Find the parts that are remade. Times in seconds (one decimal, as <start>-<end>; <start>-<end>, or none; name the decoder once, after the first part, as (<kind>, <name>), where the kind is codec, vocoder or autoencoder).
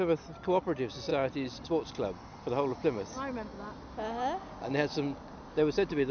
none